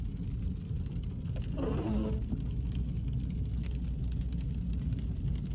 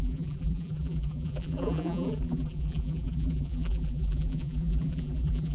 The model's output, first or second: second